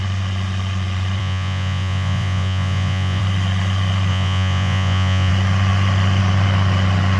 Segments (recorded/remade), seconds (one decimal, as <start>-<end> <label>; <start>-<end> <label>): 0.0-1.2 recorded; 1.2-3.2 remade; 3.2-4.1 recorded; 4.1-5.3 remade; 5.3-7.2 recorded